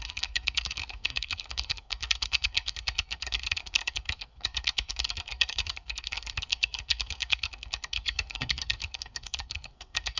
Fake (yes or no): yes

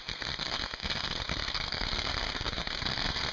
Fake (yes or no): yes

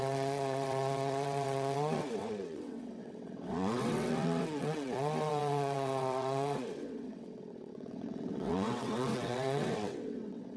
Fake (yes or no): yes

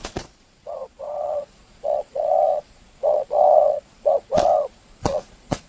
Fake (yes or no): yes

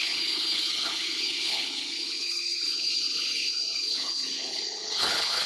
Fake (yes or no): yes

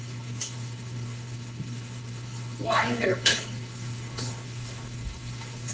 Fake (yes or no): yes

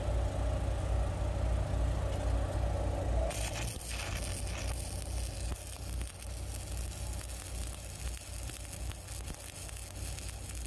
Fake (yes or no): no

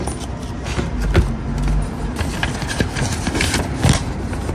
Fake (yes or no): no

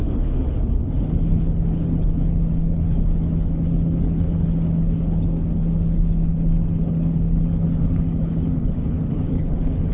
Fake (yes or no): yes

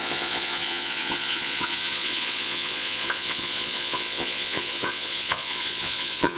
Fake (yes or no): yes